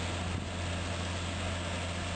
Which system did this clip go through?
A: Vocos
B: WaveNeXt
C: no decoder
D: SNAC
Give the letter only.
C